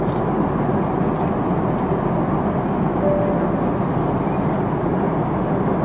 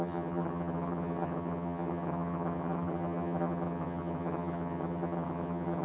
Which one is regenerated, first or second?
second